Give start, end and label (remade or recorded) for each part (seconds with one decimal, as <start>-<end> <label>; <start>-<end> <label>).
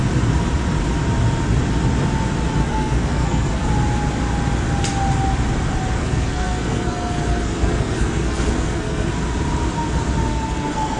0.0-2.6 recorded; 2.6-3.7 remade; 3.7-6.0 recorded; 6.0-9.1 remade; 9.1-10.3 recorded; 10.3-11.0 remade